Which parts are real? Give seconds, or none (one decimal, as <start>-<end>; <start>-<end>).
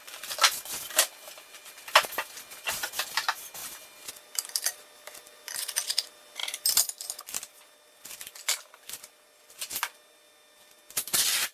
0.0-0.9; 3.6-4.1